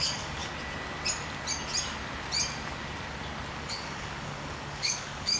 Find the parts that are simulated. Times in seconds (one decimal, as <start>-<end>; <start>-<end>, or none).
0.0-0.4; 3.6-5.4